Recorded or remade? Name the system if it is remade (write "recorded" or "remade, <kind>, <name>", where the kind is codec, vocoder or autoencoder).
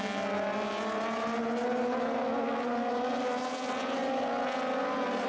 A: recorded